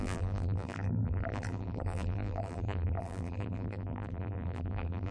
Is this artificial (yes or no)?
yes